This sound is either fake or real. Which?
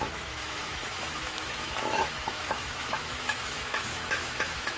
fake